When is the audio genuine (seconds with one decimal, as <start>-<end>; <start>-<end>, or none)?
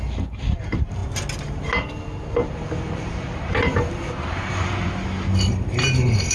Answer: 0.0-2.4; 4.9-6.3